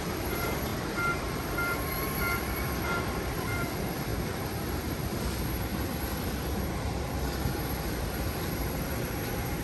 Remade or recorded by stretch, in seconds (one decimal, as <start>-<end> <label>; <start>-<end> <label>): 0.0-5.7 remade; 5.7-6.6 recorded; 6.6-9.6 remade